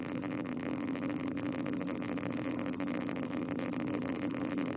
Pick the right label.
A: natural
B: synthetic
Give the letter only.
B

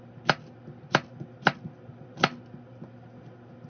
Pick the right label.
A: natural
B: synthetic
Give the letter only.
A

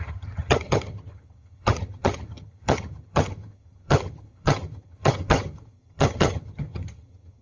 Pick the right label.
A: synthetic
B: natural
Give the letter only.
A